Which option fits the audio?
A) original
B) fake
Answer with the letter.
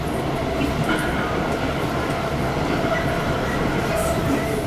A